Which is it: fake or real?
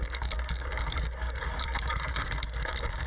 fake